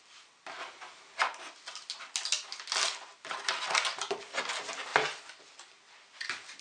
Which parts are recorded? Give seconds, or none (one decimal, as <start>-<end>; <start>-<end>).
0.0-6.6

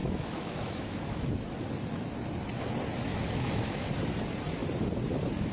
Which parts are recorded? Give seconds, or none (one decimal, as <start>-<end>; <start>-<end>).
1.3-3.1; 3.9-5.5

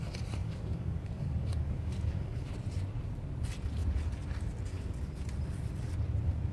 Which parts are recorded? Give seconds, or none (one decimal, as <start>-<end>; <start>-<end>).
0.0-0.4; 2.5-6.5

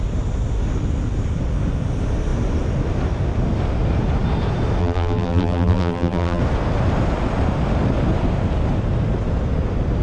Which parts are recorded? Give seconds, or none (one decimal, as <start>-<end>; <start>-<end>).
0.0-4.8; 6.4-10.0